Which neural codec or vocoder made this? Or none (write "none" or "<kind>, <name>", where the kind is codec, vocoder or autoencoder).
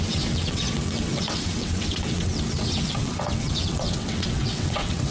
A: vocoder, WaveNeXt